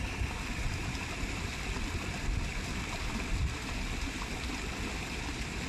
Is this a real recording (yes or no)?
yes